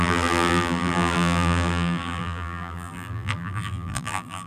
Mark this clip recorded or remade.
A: remade